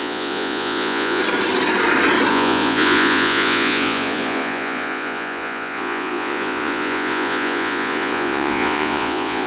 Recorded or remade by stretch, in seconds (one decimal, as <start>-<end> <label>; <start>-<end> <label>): 0.0-1.2 remade; 1.2-2.3 recorded; 2.3-9.5 remade